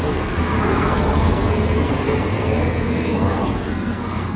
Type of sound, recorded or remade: remade